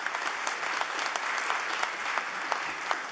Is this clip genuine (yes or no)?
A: yes